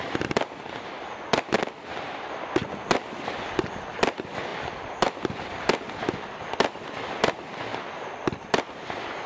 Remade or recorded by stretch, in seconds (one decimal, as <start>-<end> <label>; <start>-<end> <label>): 0.0-9.3 recorded